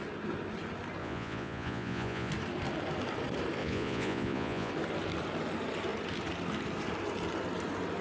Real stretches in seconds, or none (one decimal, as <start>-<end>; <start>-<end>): 0.0-1.0; 2.3-3.6; 4.7-8.0